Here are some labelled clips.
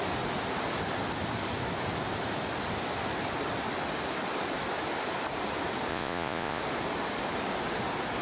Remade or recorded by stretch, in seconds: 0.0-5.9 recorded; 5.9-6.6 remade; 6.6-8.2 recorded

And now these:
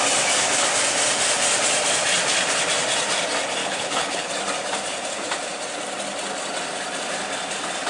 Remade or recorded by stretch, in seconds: 0.0-3.6 recorded; 3.6-4.3 remade; 4.3-7.9 recorded

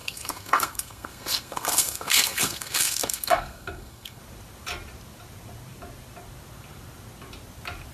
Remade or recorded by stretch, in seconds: 0.0-4.2 remade; 4.2-7.9 recorded

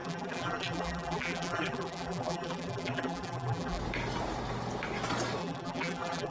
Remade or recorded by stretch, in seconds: 0.0-3.8 remade; 3.8-5.4 recorded; 5.4-6.3 remade

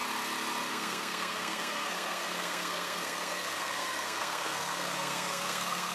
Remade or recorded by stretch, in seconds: 0.0-0.7 recorded; 0.7-5.9 remade